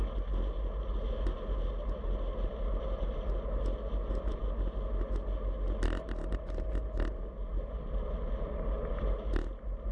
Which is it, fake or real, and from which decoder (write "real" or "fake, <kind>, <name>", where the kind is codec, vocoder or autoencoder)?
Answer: real